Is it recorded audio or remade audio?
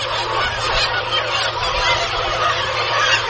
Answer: recorded